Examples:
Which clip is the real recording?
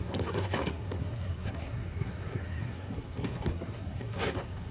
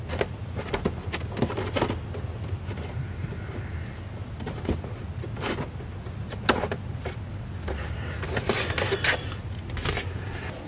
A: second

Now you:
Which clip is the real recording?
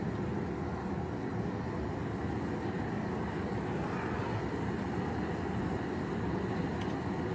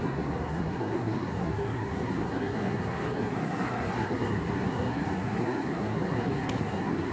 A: first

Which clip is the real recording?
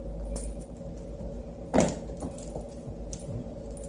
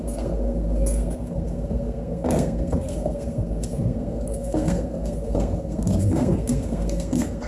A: first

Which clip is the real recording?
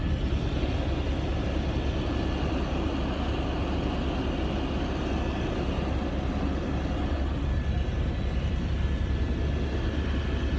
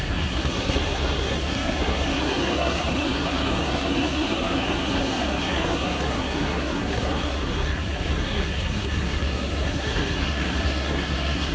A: first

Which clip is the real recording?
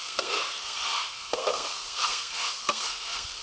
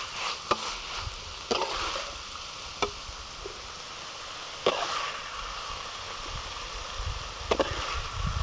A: second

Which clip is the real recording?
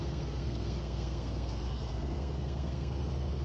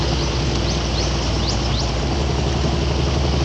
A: second